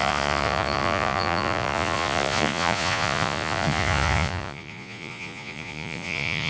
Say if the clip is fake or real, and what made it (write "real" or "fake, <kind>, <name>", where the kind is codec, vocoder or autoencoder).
fake, vocoder, Vocos